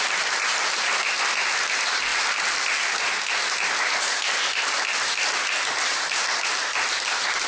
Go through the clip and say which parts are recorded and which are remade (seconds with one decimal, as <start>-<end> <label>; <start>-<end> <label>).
0.0-7.5 recorded